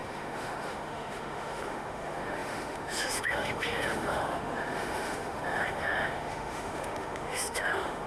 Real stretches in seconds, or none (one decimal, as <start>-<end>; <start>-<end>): none